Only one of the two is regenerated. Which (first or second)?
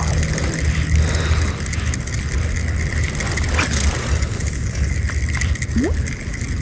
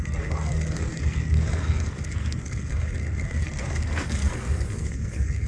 second